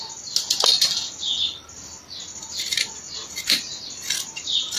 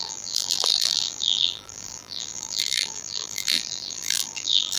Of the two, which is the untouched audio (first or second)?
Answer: first